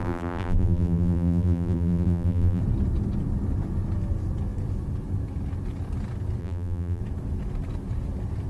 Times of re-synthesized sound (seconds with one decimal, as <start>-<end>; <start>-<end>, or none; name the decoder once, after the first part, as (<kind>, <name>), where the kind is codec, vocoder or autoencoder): 0.0-2.6 (vocoder, BigVGAN v2); 6.4-7.0